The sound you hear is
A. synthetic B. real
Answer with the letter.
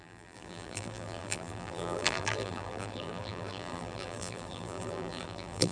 A